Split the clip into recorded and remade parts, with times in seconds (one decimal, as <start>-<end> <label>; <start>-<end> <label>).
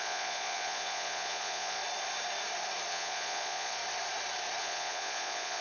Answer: 0.0-1.8 remade; 1.8-2.9 recorded; 2.9-3.8 remade; 3.8-4.6 recorded; 4.6-5.6 remade